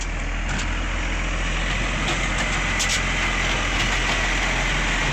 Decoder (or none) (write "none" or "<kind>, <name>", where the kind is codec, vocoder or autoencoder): none